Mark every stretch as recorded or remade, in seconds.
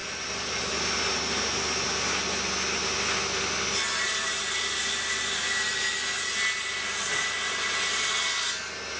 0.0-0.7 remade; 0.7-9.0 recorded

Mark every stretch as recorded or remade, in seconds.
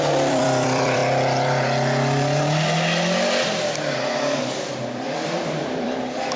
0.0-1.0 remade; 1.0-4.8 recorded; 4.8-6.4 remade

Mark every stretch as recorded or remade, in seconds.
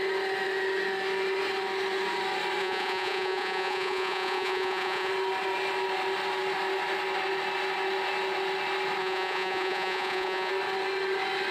0.0-2.6 recorded; 2.6-5.1 remade; 5.1-9.0 recorded; 9.0-10.5 remade; 10.5-11.5 recorded